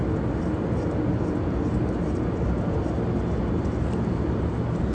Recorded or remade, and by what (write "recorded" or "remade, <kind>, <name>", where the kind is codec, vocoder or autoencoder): recorded